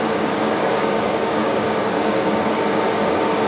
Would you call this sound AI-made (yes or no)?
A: yes